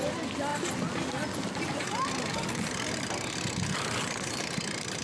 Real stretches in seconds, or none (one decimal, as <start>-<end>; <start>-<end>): 0.0-5.0